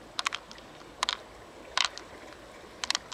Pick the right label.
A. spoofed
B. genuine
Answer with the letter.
B